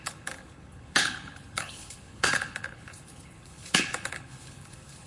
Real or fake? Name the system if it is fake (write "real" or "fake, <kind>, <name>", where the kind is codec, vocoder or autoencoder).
fake, codec, HILCodec